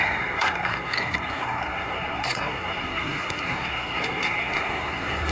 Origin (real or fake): fake